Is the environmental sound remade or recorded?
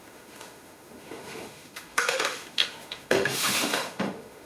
remade